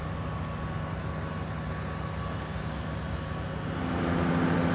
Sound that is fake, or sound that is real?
real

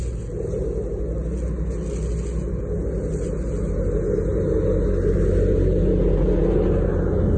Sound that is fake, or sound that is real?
real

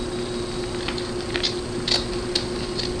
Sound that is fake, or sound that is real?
real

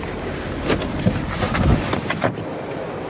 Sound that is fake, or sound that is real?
real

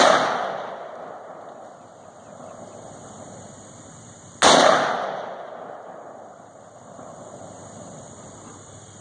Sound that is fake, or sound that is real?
real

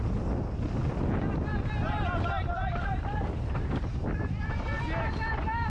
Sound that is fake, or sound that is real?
real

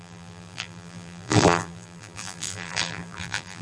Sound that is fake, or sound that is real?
fake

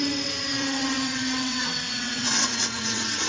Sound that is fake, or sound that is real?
fake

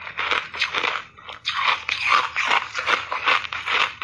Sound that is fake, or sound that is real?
real